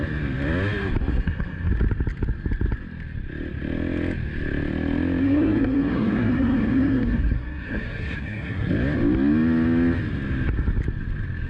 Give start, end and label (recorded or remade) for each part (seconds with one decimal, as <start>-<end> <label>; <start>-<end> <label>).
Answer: 0.0-1.1 recorded; 1.1-1.7 remade; 1.7-5.2 recorded; 5.2-8.7 remade; 8.7-11.5 recorded

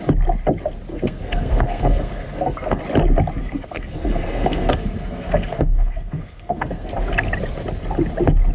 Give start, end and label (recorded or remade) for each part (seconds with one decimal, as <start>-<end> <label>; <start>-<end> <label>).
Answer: 0.0-0.9 recorded; 0.9-2.8 remade; 2.8-3.4 recorded; 3.4-6.9 remade; 6.9-8.5 recorded

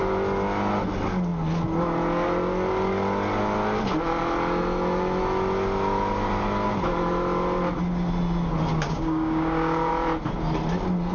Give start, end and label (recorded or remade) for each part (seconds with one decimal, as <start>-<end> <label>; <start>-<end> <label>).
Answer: 0.0-8.7 recorded; 8.7-9.9 remade; 9.9-11.1 recorded

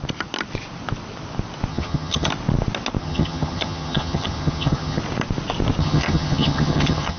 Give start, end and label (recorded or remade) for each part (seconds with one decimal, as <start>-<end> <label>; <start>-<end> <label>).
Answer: 0.0-1.7 recorded; 1.7-2.3 remade; 2.3-3.0 recorded; 3.0-5.0 remade; 5.0-5.8 recorded; 5.8-7.2 remade

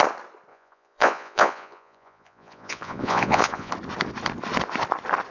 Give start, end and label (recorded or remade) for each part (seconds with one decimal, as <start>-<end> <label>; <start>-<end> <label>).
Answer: 0.0-0.5 recorded; 0.5-3.7 remade; 3.7-5.3 recorded

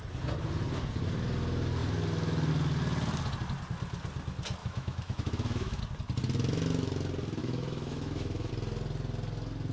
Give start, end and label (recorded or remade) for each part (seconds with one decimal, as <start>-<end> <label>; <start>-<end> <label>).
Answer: 0.0-4.6 recorded; 4.6-5.8 remade; 5.8-7.4 recorded; 7.4-8.5 remade; 8.5-9.7 recorded

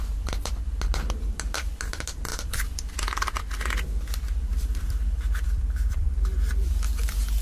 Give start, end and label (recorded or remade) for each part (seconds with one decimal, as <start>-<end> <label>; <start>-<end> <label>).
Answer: 0.0-4.5 recorded; 4.5-6.7 remade; 6.7-7.4 recorded